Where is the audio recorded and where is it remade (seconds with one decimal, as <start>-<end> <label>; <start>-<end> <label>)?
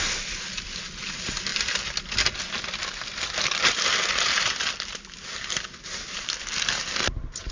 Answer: 0.0-7.5 recorded